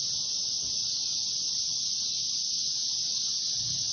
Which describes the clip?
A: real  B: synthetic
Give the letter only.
A